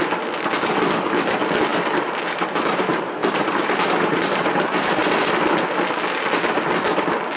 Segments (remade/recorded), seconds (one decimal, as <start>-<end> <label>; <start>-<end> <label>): 0.0-1.7 recorded; 1.7-5.0 remade; 5.0-7.4 recorded